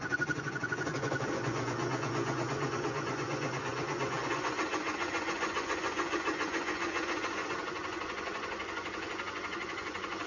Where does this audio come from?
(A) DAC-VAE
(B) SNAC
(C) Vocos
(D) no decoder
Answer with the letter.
C